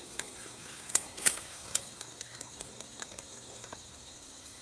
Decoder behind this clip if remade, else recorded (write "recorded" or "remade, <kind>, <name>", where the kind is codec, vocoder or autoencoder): remade, codec, SNAC